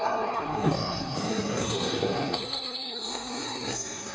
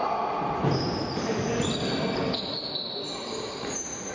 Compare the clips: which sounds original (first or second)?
second